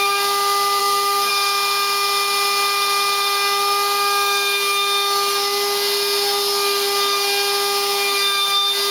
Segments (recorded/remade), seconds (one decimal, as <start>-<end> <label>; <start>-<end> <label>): 0.0-0.8 recorded; 0.8-1.3 remade; 1.3-8.9 recorded